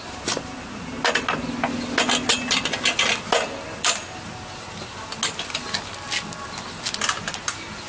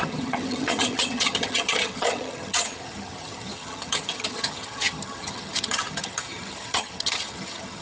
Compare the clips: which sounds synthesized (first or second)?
second